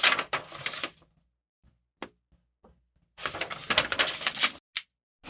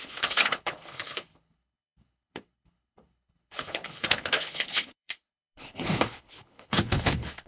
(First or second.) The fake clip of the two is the second